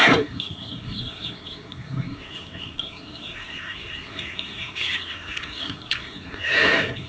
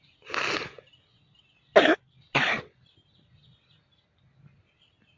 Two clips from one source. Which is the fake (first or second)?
first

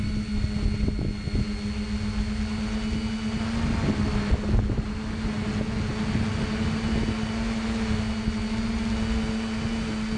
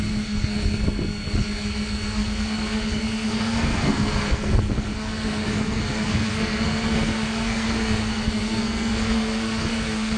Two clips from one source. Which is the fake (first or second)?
second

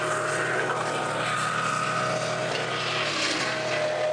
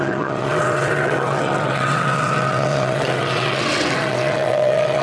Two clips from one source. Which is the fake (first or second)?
second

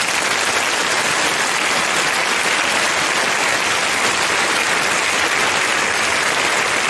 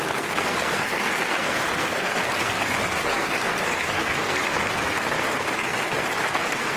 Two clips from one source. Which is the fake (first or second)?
second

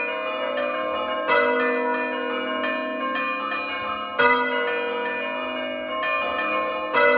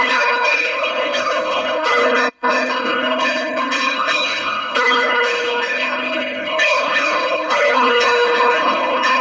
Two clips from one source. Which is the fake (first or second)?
second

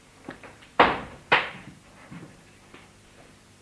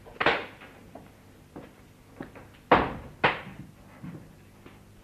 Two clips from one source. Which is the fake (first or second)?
first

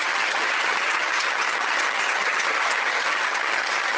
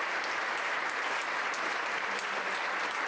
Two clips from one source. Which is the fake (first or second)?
first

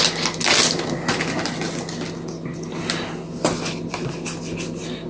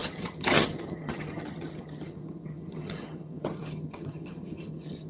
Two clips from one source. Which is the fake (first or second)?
second